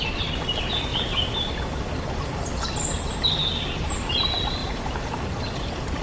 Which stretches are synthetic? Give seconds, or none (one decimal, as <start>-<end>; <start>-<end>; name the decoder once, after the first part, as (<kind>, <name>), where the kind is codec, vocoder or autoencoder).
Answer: 0.9-1.5 (vocoder, BigVGAN v2); 4.6-5.2